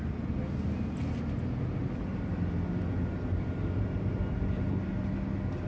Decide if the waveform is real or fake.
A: real